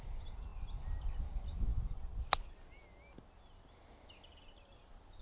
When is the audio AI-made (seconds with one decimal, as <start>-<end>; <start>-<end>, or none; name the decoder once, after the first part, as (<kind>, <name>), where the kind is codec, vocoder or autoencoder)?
none